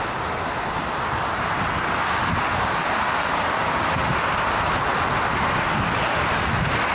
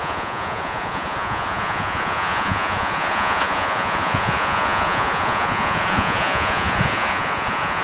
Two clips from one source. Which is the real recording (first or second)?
first